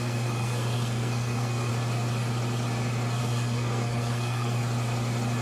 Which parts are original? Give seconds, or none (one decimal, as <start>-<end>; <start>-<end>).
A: 1.7-3.2; 4.6-5.4